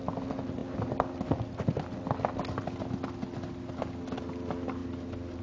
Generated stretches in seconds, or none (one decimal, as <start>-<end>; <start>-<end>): none